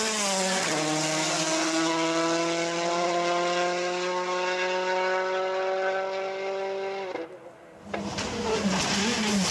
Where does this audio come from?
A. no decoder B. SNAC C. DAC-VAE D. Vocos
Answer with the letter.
A